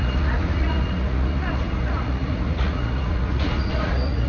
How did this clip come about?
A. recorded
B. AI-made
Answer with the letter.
B